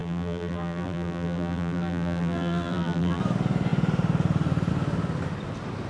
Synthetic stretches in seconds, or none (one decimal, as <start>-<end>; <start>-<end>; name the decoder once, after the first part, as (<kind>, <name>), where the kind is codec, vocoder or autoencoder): 0.0-3.2 (vocoder, BigVGAN v2)